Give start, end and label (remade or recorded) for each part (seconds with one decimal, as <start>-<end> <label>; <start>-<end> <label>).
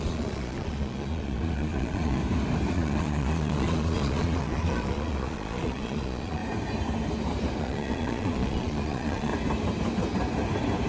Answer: 0.0-2.2 remade; 2.2-2.7 recorded; 2.7-6.4 remade; 6.4-7.6 recorded; 7.6-9.3 remade; 9.3-10.9 recorded